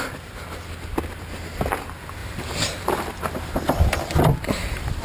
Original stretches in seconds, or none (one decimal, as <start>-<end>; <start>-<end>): 0.0-2.2